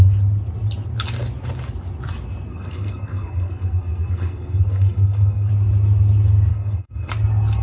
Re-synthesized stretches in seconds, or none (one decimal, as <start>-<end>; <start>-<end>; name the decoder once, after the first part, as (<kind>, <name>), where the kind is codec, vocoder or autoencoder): 2.5-5.5 (codec, SNAC); 6.5-7.1